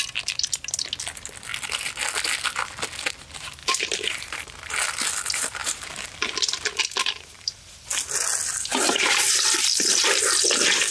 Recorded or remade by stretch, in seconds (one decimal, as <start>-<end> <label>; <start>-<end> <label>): 0.0-3.6 recorded; 3.6-4.7 remade; 4.7-5.6 recorded; 5.6-6.1 remade; 6.1-8.7 recorded; 8.7-9.4 remade; 9.4-10.9 recorded